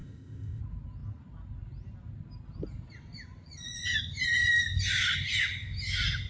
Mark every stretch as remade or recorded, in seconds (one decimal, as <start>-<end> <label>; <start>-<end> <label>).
0.0-0.6 remade; 0.6-6.3 recorded